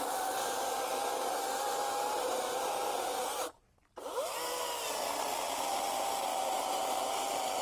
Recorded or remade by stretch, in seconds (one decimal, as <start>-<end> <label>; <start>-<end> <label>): 0.0-6.3 recorded; 6.3-6.8 remade; 6.8-7.6 recorded